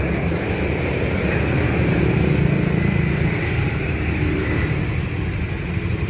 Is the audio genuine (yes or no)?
yes